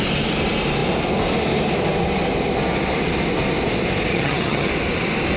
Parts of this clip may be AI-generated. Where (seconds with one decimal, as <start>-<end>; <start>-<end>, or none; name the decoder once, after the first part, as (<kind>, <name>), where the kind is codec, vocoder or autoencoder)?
4.1-4.7 (vocoder, HiFi-GAN)